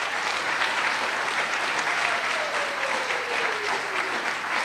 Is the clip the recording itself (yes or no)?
no